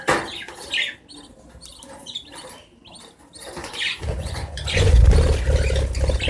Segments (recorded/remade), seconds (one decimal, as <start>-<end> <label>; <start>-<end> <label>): 0.0-3.6 recorded; 3.6-5.0 remade; 5.0-6.3 recorded